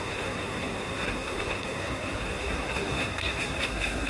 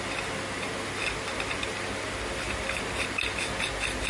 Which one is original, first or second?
second